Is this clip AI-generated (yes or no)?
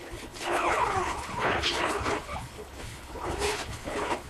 yes